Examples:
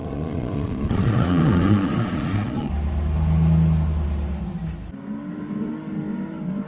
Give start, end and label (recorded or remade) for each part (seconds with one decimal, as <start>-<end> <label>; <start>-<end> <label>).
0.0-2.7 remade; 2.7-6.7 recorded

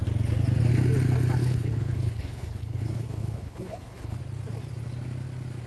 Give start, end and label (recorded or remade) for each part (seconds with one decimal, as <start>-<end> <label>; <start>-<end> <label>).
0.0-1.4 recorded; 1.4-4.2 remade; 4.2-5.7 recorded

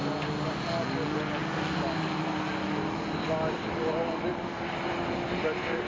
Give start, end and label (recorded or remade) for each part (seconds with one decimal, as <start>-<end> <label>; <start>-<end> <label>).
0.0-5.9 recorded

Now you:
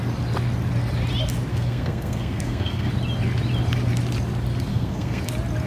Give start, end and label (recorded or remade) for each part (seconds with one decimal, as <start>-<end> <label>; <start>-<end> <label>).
0.0-1.5 recorded; 1.5-2.9 remade; 2.9-4.7 recorded; 4.7-5.2 remade; 5.2-5.7 recorded

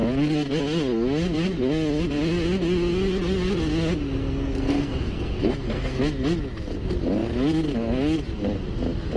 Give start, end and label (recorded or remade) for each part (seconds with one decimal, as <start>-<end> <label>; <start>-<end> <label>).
0.0-4.2 recorded; 4.2-6.0 remade; 6.0-9.2 recorded

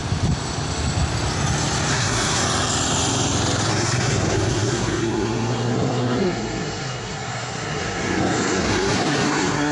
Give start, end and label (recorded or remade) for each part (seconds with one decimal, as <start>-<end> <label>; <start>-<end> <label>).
0.0-1.9 recorded; 1.9-2.4 remade; 2.4-3.7 recorded; 3.7-9.7 remade

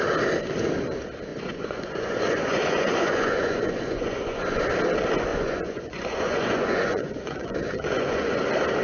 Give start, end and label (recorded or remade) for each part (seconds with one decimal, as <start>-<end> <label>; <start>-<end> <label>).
0.0-1.3 recorded; 1.3-4.6 remade; 4.6-5.3 recorded; 5.3-8.4 remade; 8.4-8.8 recorded

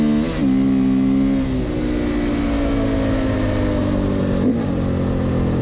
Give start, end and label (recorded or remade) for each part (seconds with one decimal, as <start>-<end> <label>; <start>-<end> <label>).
0.0-5.6 recorded